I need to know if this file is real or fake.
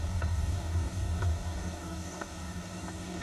fake